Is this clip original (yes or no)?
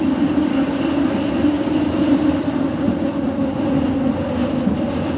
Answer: yes